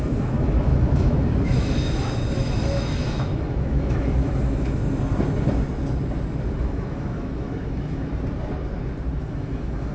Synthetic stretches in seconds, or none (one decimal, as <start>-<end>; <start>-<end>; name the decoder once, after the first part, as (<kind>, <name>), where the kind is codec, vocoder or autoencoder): 0.0-4.8 (autoencoder, DAC-VAE); 6.6-8.1; 9.2-9.9